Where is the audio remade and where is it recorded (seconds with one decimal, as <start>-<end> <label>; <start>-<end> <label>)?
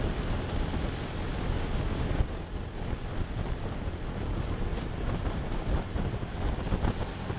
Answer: 0.0-4.7 recorded; 4.7-6.2 remade; 6.2-7.4 recorded